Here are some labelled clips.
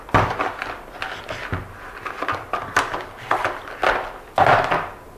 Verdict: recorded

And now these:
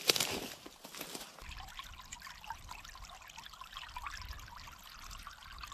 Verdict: recorded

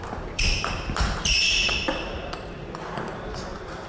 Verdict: remade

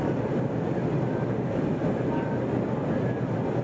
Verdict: recorded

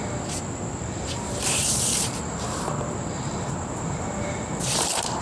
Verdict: remade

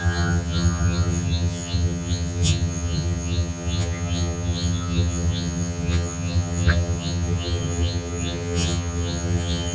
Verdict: remade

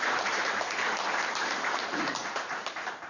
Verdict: remade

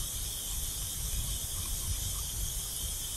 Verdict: recorded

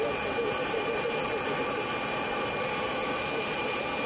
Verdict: recorded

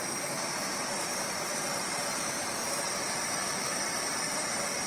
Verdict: remade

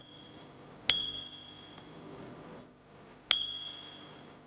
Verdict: recorded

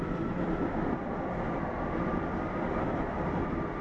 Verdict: recorded